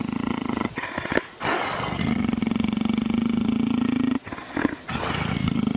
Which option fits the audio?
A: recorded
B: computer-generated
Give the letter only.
A